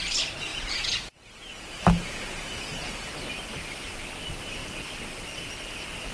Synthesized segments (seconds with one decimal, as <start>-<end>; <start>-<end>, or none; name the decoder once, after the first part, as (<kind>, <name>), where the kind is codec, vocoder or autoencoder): 0.5-3.1 (vocoder, Vocos)